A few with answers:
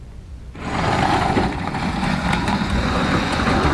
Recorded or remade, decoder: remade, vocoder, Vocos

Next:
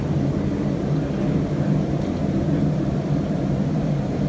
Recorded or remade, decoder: recorded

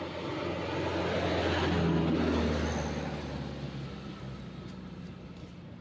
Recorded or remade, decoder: recorded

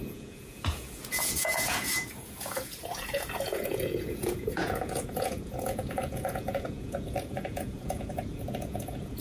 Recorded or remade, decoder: remade, vocoder, Vocos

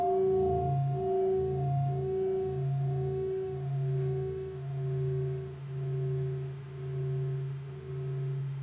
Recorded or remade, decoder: remade, autoencoder, DAC-VAE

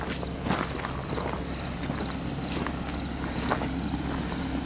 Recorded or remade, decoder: recorded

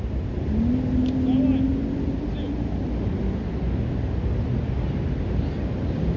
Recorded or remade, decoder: recorded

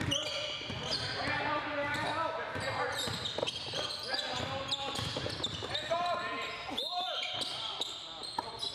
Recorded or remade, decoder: recorded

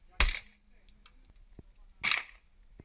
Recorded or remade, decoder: recorded